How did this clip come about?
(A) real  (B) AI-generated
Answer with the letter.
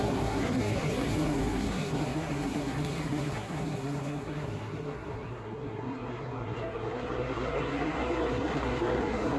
B